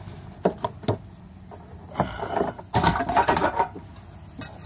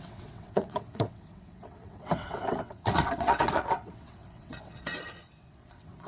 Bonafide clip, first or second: first